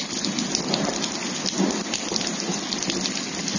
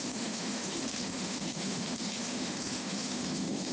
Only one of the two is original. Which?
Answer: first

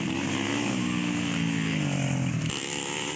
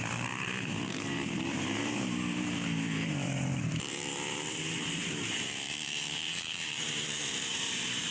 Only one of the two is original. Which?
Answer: first